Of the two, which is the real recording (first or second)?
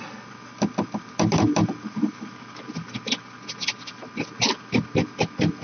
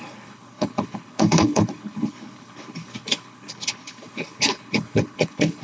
first